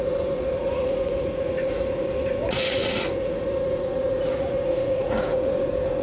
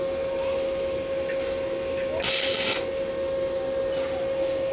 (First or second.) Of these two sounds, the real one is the second